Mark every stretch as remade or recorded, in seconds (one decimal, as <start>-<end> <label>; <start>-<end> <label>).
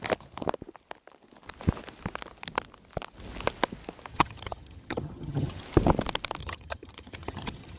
0.0-4.1 recorded; 4.1-5.6 remade; 5.6-6.4 recorded; 6.4-7.8 remade